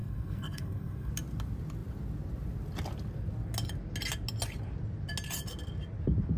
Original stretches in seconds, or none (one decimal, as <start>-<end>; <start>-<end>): 1.1-6.4